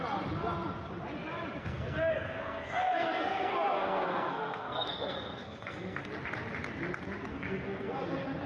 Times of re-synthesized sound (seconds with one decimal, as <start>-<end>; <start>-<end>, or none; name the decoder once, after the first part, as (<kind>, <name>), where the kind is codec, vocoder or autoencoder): 1.6-6.1 (codec, SNAC); 7.3-8.0

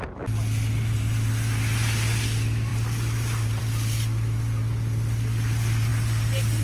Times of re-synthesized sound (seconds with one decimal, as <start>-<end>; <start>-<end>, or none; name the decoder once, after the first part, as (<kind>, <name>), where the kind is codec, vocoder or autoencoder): none